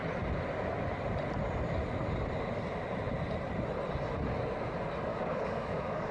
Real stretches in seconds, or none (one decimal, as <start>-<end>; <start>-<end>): 0.0-5.1